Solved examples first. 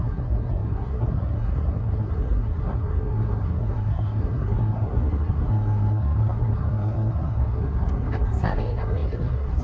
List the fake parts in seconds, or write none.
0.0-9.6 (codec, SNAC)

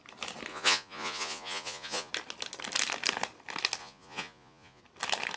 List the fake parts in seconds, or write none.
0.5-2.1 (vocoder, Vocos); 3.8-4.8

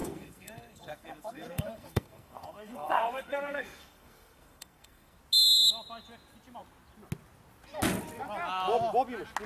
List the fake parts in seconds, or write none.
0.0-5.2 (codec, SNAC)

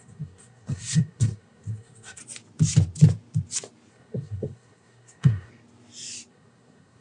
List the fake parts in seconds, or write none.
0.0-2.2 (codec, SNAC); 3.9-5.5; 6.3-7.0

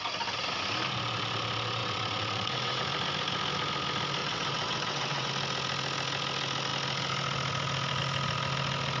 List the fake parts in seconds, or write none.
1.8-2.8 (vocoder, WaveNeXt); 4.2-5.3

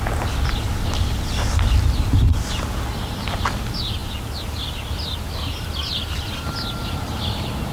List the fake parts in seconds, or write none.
none

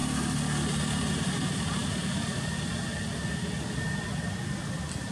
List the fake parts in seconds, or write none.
none

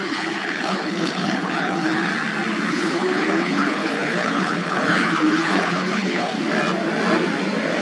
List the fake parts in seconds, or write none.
0.0-2.1 (codec, HILCodec); 2.7-6.3